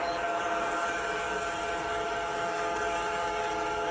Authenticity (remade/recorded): remade